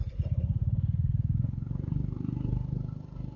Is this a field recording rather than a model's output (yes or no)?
no